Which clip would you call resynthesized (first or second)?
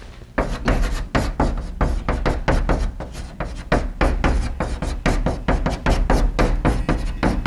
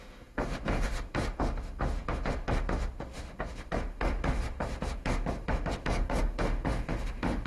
second